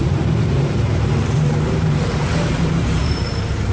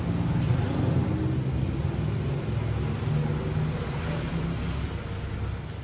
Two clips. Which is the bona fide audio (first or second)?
second